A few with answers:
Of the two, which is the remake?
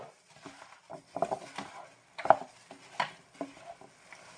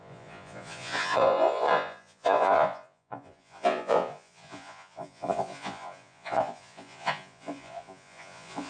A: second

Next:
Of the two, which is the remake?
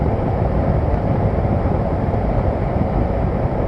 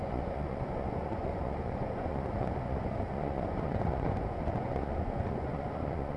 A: second